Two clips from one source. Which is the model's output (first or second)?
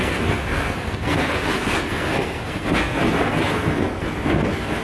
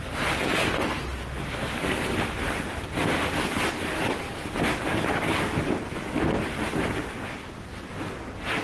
first